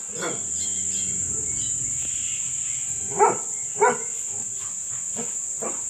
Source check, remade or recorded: recorded